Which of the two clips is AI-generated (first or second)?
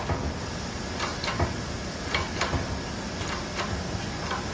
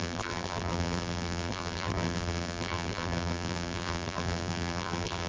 second